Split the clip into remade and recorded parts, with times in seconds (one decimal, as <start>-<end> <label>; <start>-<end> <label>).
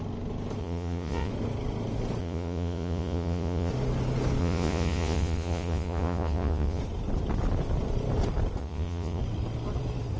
0.0-0.6 recorded; 0.6-1.3 remade; 1.3-2.2 recorded; 2.2-3.7 remade; 3.7-4.4 recorded; 4.4-6.8 remade; 6.8-8.6 recorded; 8.6-9.2 remade; 9.2-10.2 recorded